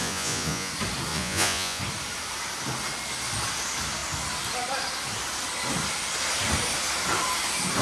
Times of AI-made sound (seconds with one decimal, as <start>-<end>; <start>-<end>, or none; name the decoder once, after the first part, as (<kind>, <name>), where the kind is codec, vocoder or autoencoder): 0.0-0.7 (vocoder, Vocos); 1.1-1.8